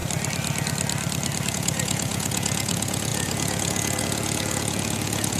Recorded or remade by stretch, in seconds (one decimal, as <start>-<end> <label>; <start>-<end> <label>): 0.0-1.5 recorded; 1.5-5.4 remade